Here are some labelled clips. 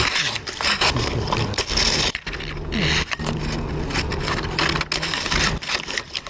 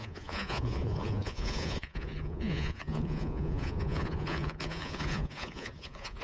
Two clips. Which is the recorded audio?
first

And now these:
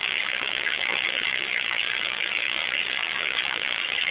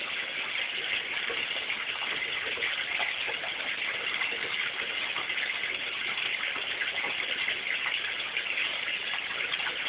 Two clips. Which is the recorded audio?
second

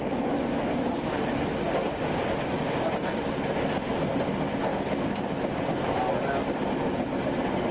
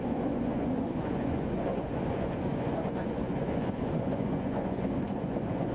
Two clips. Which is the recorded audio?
first